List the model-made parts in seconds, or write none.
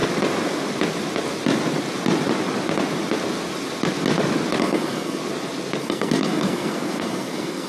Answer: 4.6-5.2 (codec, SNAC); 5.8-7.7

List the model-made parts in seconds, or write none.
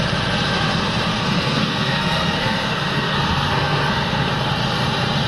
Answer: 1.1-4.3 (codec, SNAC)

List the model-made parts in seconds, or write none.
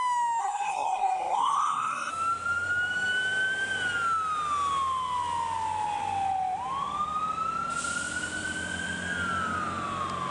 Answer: 0.4-2.1 (codec, SNAC)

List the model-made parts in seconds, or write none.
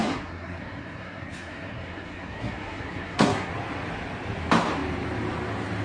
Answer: 0.0-3.5 (codec, SNAC)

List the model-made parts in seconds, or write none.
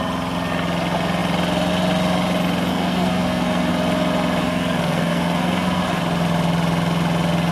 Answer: 2.7-3.7 (codec, SNAC); 4.4-6.0